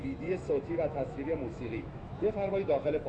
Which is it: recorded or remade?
remade